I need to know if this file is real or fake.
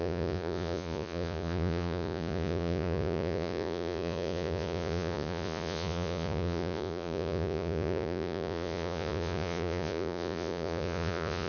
fake